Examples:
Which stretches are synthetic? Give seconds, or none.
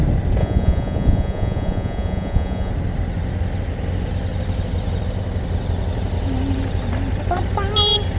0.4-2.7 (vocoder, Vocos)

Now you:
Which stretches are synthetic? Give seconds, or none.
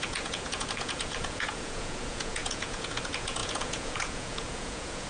0.0-5.1 (vocoder, Vocos)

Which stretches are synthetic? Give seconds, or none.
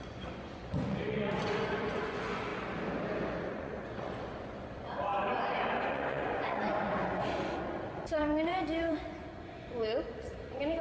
0.0-2.5 (vocoder, Vocos); 3.4-5.1; 5.9-10.8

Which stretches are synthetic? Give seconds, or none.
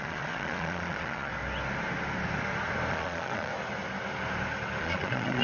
0.0-1.3 (vocoder, Vocos); 2.9-3.5; 4.8-5.4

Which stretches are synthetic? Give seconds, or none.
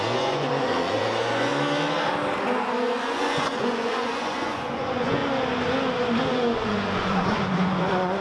0.0-1.5 (vocoder, Vocos); 3.0-5.2; 6.3-8.2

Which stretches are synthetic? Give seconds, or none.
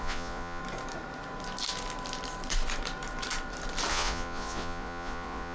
0.0-0.6 (vocoder, Vocos); 3.9-5.5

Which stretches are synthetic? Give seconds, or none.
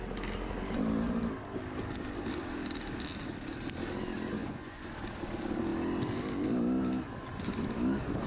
4.4-4.9 (vocoder, Vocos)